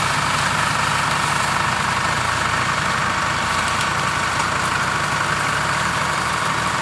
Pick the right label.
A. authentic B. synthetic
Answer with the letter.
A